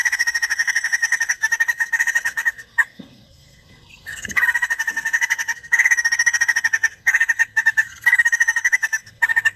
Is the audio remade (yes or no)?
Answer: yes